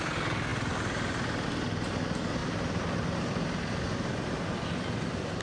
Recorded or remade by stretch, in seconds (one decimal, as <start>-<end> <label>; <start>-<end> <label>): 0.0-2.4 recorded; 2.4-5.4 remade